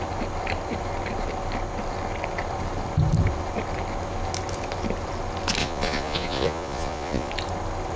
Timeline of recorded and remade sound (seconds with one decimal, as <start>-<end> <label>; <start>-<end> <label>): 0.0-5.6 recorded; 5.6-7.3 remade; 7.3-8.0 recorded